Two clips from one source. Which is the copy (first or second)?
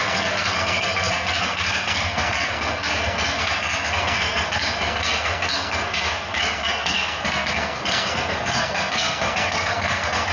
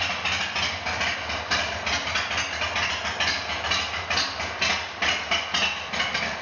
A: first